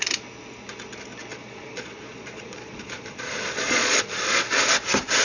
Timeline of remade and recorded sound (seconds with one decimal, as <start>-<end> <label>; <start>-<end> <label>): 0.0-1.3 recorded; 1.3-4.4 remade; 4.4-5.2 recorded